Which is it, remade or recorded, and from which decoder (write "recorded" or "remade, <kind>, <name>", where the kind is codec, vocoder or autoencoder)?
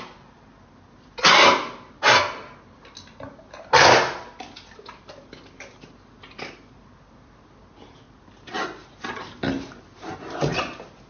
recorded